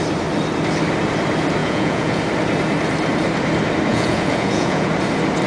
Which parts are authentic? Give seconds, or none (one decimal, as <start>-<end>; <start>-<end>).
0.0-1.6; 2.2-3.9; 4.9-5.5